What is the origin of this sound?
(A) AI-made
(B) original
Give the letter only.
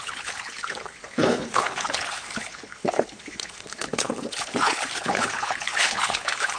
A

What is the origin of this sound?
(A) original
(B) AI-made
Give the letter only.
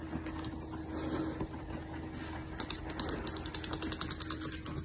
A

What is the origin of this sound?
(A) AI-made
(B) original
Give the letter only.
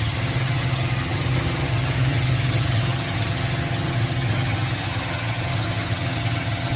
A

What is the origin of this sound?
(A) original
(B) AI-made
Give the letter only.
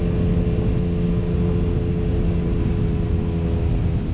A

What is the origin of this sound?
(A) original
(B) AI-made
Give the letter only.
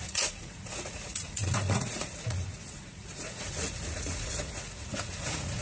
B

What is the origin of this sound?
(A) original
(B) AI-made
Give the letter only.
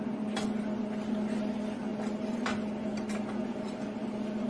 A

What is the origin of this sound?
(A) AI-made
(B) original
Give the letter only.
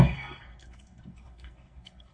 A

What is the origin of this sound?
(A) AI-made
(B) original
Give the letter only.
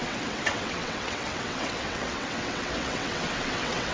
A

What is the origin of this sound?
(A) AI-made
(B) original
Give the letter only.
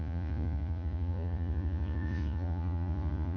A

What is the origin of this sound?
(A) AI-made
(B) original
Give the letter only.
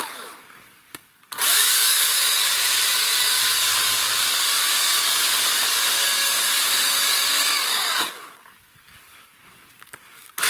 A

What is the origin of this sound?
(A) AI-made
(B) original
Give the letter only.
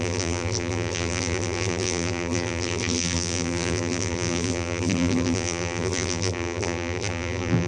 A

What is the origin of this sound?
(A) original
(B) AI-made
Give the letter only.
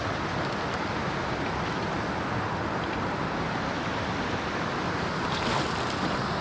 A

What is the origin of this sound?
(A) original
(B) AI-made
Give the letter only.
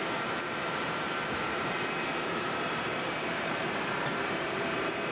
B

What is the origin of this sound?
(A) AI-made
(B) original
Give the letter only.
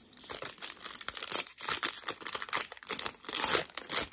B